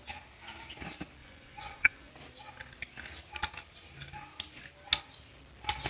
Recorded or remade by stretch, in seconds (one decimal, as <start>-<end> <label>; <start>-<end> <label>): 0.0-1.2 recorded; 1.2-2.1 remade; 2.1-5.9 recorded